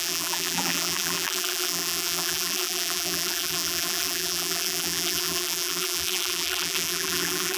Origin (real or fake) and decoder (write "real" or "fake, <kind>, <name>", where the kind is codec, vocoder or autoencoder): fake, vocoder, BigVGAN v2